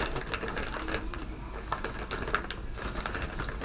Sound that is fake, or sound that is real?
real